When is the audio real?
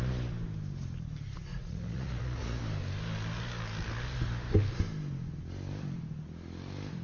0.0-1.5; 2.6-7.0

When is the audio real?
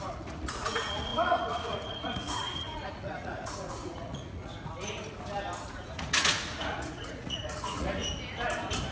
4.5-5.7; 8.0-8.9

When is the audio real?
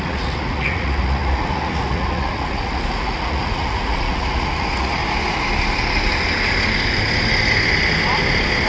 5.0-8.7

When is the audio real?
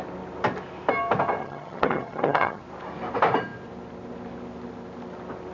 0.0-1.4; 2.6-5.5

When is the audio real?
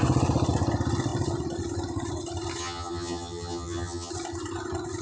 0.0-2.6; 4.1-5.0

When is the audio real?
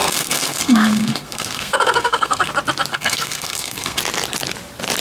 2.5-2.9; 4.0-5.0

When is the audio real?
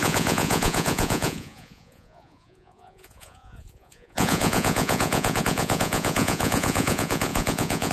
none